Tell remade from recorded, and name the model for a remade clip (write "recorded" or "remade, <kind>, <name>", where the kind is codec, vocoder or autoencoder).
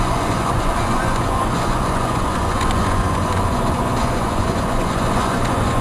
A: remade, vocoder, Vocos